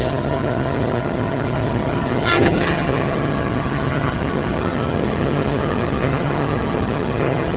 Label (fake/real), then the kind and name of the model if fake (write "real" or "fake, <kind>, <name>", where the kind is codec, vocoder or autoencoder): fake, vocoder, HiFi-GAN